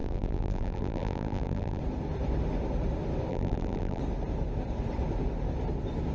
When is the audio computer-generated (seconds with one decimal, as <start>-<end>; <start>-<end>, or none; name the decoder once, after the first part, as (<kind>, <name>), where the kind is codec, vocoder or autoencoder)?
0.0-1.8 (vocoder, BigVGAN v2); 3.3-4.0